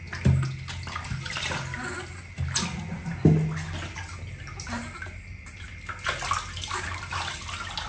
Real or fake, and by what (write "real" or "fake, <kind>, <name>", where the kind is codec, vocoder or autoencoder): real